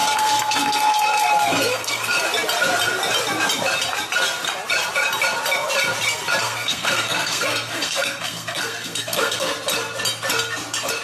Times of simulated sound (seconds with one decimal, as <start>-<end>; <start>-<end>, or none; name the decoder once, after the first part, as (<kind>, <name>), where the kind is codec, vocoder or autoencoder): 0.0-2.2 (codec, SNAC); 6.4-9.5